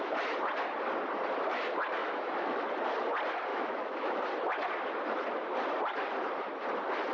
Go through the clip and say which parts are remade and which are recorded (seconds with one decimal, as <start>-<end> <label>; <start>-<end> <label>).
0.0-2.0 recorded; 2.0-2.7 remade; 2.7-3.5 recorded; 3.5-4.2 remade; 4.2-7.1 recorded